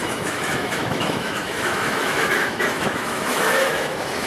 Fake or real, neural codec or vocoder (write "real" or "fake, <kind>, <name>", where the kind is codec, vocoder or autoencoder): fake, autoencoder, DAC-VAE